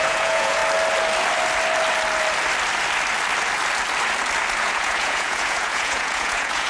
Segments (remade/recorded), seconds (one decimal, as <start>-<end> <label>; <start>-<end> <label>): 0.0-0.6 remade; 0.6-4.6 recorded; 4.6-6.7 remade